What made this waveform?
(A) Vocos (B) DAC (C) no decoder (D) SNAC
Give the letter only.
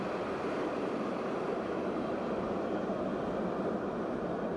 C